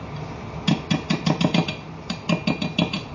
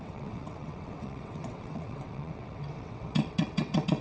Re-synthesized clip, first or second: second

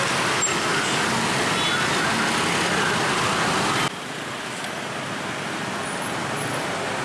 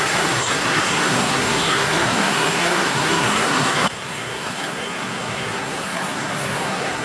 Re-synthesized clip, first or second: second